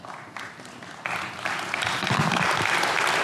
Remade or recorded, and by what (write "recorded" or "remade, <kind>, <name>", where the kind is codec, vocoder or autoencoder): recorded